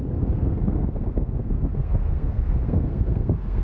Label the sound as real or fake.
fake